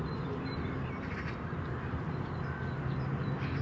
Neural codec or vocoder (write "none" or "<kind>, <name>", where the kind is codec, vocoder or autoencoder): none